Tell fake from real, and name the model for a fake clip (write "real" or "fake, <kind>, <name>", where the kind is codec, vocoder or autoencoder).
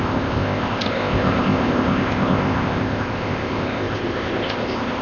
fake, codec, ZipCodec